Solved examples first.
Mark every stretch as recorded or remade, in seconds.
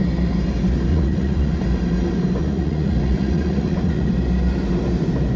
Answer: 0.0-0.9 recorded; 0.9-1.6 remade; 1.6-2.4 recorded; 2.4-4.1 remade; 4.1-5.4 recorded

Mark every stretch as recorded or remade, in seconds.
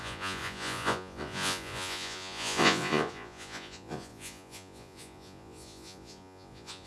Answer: 0.0-6.9 remade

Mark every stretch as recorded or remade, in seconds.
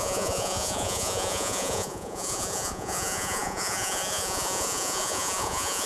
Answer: 0.0-5.9 remade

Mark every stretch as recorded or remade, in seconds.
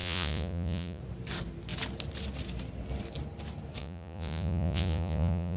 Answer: 0.0-1.0 remade; 1.0-3.8 recorded; 3.8-5.6 remade